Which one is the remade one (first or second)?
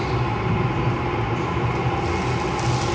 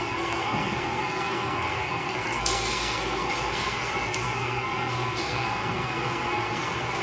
second